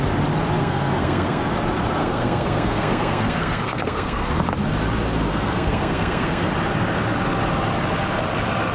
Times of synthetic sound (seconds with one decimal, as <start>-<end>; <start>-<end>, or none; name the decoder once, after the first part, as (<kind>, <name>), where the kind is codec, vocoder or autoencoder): 0.6-1.4 (codec, SNAC); 2.0-4.3; 5.3-6.5